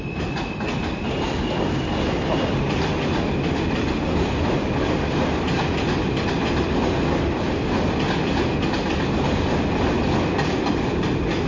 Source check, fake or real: real